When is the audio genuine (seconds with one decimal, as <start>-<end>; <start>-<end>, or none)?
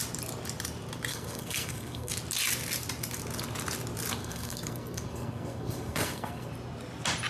0.0-1.1; 2.1-4.2; 6.5-7.3